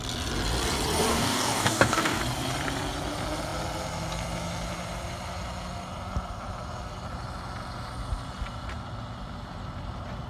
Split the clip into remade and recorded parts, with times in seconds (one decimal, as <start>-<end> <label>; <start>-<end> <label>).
0.0-1.1 recorded; 1.1-2.2 remade; 2.2-10.3 recorded